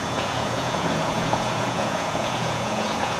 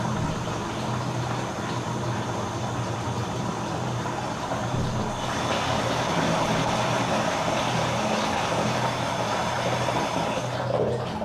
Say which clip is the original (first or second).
second